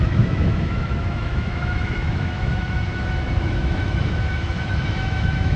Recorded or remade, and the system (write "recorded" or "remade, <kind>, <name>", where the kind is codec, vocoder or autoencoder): remade, autoencoder, DAC-VAE